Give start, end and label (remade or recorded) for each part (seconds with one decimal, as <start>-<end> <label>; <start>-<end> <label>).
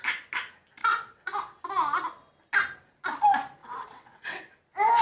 0.0-0.8 recorded; 0.8-1.6 remade; 1.6-3.6 recorded; 3.6-4.4 remade; 4.4-5.0 recorded